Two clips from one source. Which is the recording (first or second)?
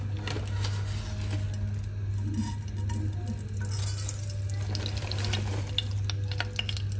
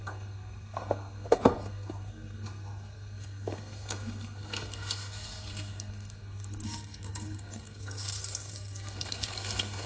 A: first